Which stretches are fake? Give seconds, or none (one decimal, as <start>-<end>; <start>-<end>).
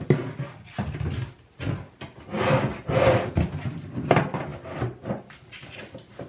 none